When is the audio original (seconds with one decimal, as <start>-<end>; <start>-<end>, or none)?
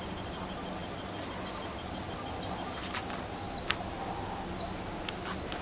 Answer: 0.0-5.6